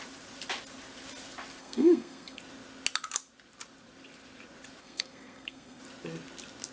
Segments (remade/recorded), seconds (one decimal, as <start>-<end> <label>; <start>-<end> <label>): 0.0-1.6 recorded; 1.6-2.4 remade; 2.4-4.8 recorded; 4.8-5.8 remade; 5.8-6.7 recorded

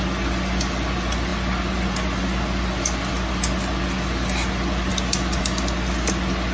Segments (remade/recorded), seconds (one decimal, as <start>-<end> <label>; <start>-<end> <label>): 0.0-6.5 recorded

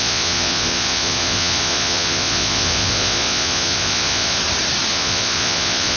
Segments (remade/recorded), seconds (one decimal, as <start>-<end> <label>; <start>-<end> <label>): 0.0-4.4 remade; 4.4-4.9 recorded; 4.9-6.0 remade

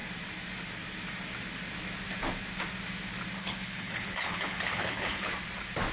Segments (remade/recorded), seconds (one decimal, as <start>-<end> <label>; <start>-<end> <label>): 0.0-3.4 recorded; 3.4-5.3 remade; 5.3-5.9 recorded